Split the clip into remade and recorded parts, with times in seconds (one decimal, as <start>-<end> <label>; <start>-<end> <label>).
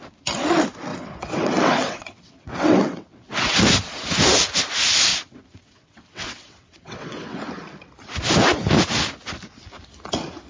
0.0-0.9 recorded; 0.9-3.6 remade; 3.6-5.1 recorded; 5.1-7.4 remade; 7.4-10.5 recorded